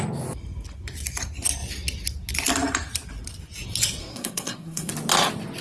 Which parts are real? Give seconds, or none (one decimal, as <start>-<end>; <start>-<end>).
0.0-4.0; 4.9-5.6